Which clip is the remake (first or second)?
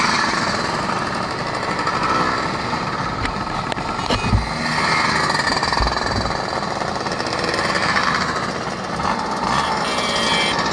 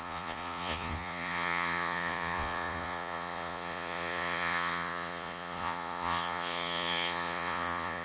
second